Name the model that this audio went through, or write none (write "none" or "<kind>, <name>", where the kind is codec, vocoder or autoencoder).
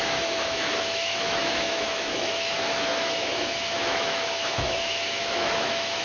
autoencoder, DAC-VAE